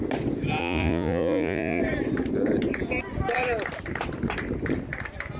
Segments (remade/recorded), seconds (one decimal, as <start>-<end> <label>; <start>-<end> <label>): 0.0-0.6 recorded; 0.6-1.8 remade; 1.8-5.4 recorded